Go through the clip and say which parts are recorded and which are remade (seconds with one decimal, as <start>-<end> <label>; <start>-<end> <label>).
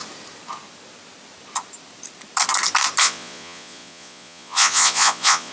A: 0.0-3.0 recorded; 3.0-5.5 remade